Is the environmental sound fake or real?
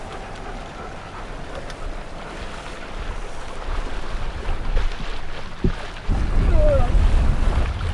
real